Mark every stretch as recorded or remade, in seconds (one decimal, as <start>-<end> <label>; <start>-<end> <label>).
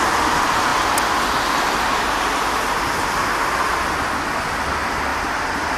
0.0-5.1 recorded; 5.1-5.8 remade